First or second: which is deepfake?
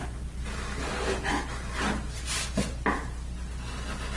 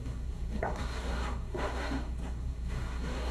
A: second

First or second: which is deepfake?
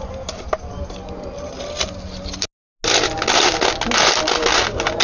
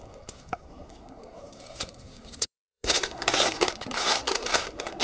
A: second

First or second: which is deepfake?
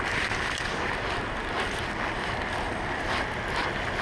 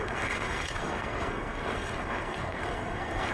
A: second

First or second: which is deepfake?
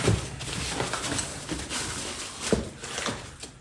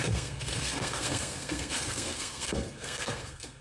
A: second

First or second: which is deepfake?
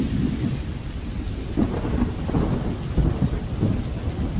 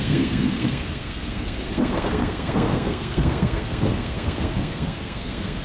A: second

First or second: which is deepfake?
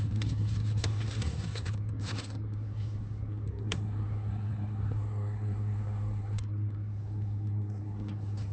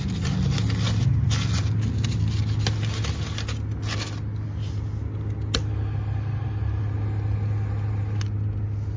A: first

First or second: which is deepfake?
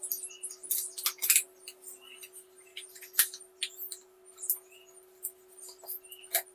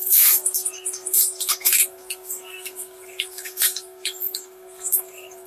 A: second